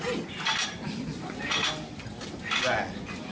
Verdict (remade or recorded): recorded